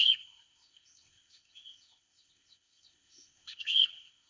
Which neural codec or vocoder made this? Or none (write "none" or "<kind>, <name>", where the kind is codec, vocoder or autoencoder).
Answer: codec, ZipCodec